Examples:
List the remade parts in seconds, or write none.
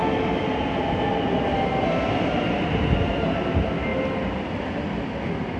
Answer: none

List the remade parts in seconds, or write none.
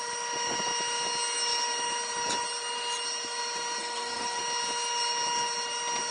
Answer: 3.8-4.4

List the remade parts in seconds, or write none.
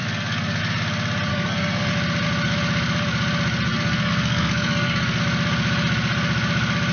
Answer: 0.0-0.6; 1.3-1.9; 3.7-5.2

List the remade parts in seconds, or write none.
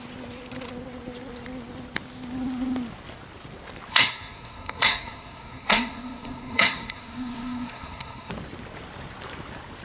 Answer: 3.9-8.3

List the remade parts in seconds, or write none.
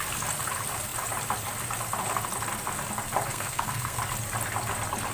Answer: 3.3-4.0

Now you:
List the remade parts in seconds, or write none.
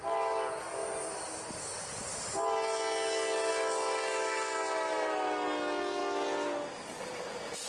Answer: none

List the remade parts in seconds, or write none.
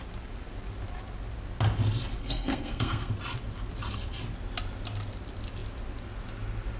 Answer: 2.2-3.1